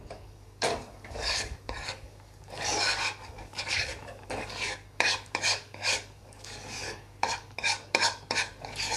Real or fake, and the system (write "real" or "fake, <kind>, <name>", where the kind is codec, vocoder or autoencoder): fake, codec, DAC